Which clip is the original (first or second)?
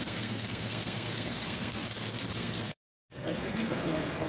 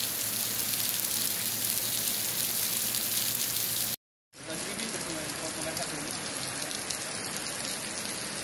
second